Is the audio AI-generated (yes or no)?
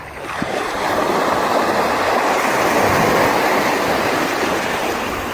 yes